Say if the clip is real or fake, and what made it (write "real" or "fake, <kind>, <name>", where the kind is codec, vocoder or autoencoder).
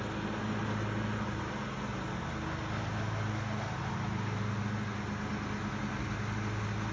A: real